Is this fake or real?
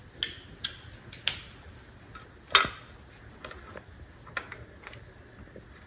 real